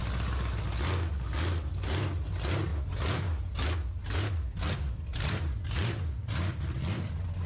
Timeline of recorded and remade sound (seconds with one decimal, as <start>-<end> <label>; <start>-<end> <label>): 0.0-5.1 recorded; 5.1-5.9 remade; 5.9-7.5 recorded